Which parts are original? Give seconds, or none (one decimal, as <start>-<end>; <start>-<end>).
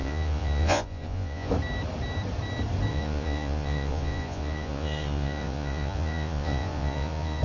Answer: 1.5-2.9